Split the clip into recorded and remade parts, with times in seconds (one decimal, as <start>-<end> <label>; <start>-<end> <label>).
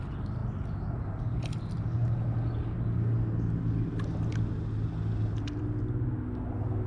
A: 0.0-6.9 recorded